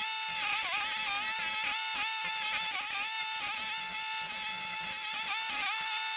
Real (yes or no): yes